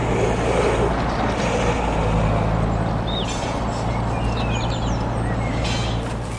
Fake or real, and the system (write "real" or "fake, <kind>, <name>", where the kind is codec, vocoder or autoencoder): real